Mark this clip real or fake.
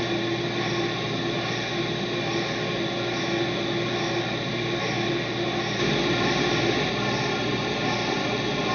real